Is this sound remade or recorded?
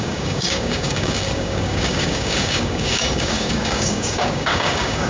remade